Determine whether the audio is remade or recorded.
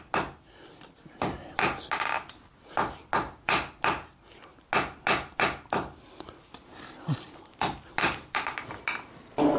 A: recorded